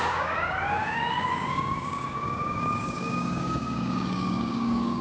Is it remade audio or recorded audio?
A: remade